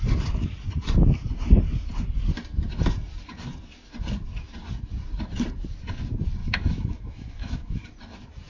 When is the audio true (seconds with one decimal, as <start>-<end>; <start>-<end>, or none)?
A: 0.0-6.4; 7.9-8.5